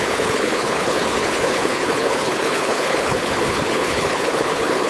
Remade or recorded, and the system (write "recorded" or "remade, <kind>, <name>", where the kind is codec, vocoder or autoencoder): remade, codec, HILCodec